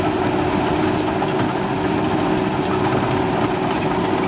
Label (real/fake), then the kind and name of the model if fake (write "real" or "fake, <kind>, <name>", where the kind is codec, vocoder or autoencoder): real